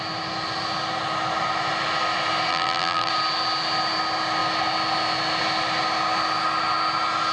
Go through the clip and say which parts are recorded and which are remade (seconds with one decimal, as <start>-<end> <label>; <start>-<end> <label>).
0.0-2.5 recorded; 2.5-3.1 remade; 3.1-7.3 recorded